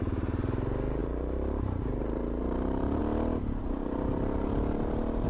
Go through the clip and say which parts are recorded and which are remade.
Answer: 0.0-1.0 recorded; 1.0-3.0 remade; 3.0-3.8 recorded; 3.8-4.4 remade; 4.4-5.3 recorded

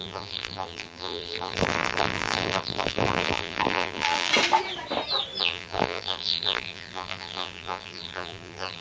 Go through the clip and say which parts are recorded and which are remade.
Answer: 0.0-4.3 remade; 4.3-5.4 recorded; 5.4-8.8 remade

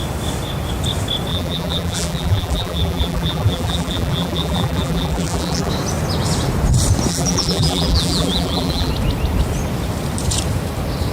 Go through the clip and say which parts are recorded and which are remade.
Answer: 0.0-1.3 recorded; 1.3-5.7 remade; 5.7-7.1 recorded; 7.1-8.9 remade; 8.9-11.1 recorded

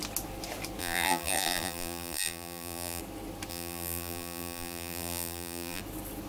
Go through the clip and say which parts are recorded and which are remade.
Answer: 0.0-0.8 recorded; 0.8-3.0 remade; 3.0-3.5 recorded; 3.5-5.8 remade; 5.8-6.3 recorded